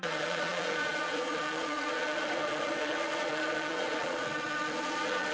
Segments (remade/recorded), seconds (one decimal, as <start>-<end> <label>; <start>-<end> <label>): 0.0-5.3 remade